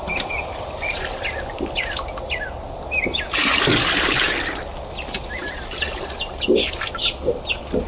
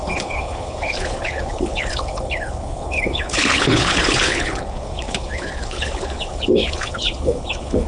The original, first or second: first